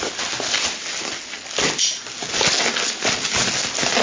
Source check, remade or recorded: recorded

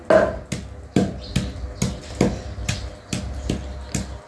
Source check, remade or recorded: recorded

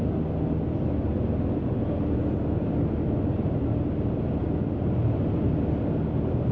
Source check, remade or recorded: recorded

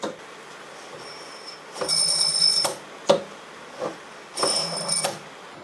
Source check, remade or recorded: recorded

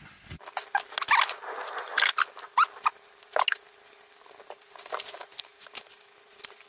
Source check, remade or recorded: recorded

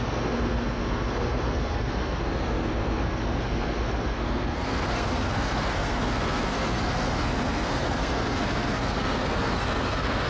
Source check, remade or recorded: remade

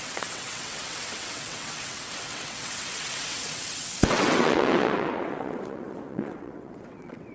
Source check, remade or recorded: remade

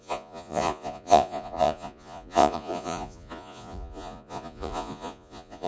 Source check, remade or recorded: remade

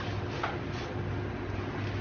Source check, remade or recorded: recorded